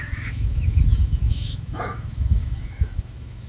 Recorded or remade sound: remade